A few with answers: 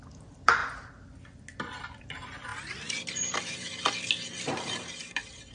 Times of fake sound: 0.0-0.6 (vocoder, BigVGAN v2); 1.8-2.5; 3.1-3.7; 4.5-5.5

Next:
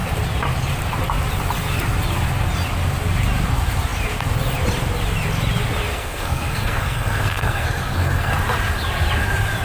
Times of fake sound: 5.9-8.3 (codec, SNAC)

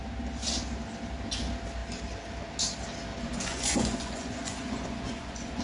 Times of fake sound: 3.1-5.6 (vocoder, Vocos)

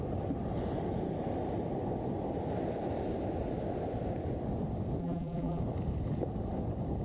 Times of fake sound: 5.0-5.6 (vocoder, BigVGAN v2)

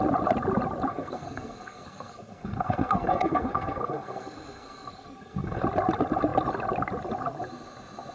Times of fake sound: 0.9-5.6 (codec, SNAC)

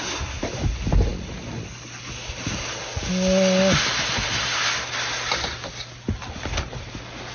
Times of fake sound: none

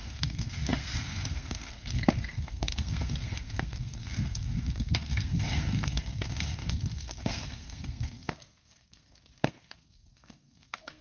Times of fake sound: 0.0-11.0 (codec, SNAC)